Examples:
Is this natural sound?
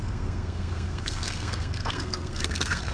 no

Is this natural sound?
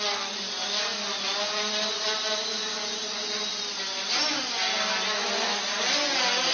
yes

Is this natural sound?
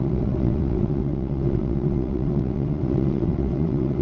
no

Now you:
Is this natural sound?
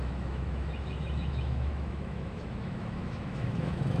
no